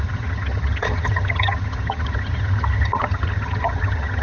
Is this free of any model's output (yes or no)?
no